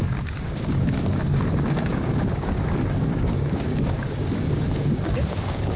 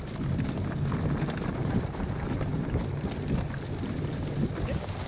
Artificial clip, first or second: first